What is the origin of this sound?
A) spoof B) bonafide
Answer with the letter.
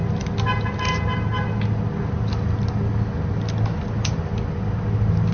B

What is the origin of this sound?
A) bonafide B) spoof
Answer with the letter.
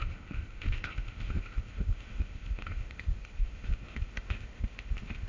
B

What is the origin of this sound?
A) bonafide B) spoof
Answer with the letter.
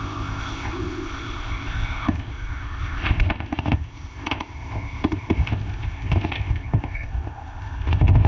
B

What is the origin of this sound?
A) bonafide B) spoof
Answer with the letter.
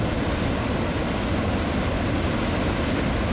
A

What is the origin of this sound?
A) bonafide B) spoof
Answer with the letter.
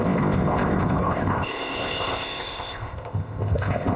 B